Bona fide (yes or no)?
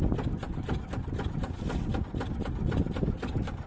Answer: yes